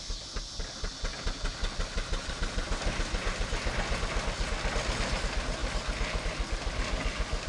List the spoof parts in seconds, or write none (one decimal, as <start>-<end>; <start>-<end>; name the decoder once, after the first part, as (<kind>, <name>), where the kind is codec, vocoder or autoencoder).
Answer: none